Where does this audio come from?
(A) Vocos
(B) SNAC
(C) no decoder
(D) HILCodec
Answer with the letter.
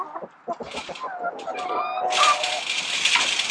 C